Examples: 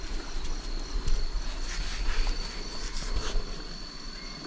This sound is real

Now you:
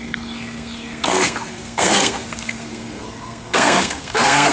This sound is fake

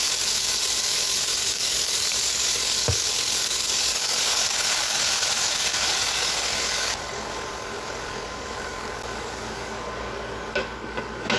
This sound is fake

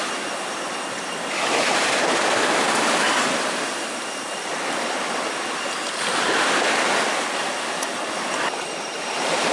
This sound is fake